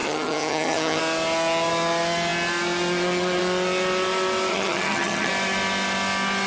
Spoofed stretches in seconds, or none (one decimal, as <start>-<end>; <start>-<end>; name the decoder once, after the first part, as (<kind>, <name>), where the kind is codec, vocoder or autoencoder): 0.0-1.0 (vocoder, HiFi-GAN); 4.5-5.3